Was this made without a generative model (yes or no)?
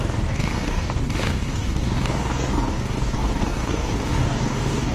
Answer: no